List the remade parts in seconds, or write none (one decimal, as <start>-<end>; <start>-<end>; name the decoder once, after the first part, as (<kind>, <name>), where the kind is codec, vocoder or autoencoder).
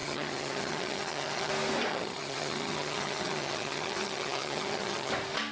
0.0-1.5 (vocoder, HiFi-GAN); 1.9-5.1